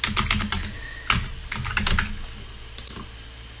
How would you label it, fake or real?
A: real